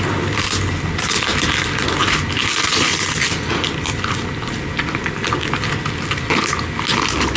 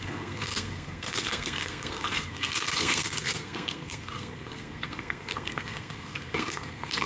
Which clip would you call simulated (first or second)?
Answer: second